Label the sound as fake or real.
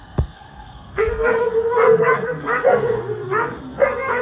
fake